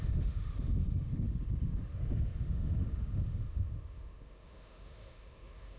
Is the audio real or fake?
fake